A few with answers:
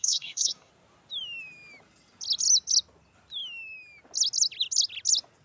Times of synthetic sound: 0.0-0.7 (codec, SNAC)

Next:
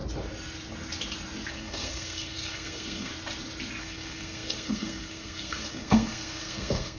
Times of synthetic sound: 1.5-3.1 (codec, SNAC); 3.8-7.0

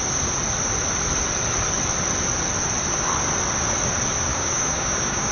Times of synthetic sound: 4.3-5.3 (codec, DAC)

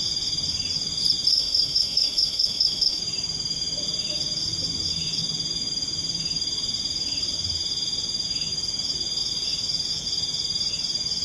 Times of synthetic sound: 1.3-3.0 (autoencoder, DAC-VAE)

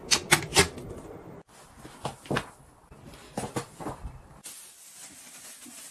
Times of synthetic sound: none